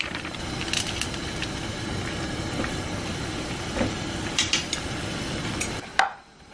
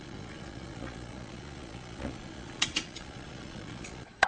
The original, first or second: first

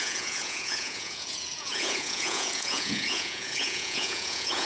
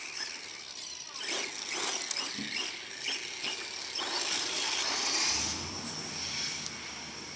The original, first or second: second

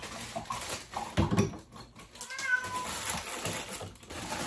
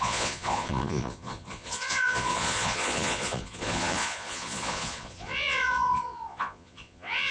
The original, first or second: first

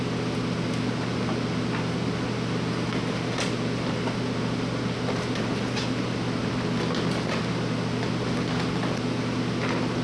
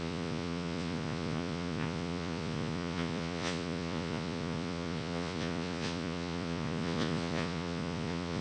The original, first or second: first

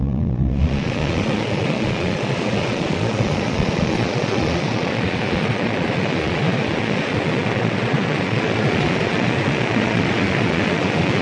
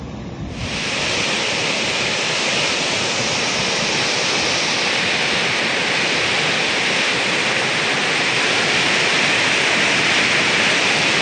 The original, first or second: second